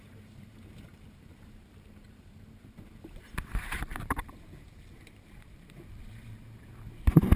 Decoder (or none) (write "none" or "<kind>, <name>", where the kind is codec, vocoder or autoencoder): vocoder, BigVGAN v2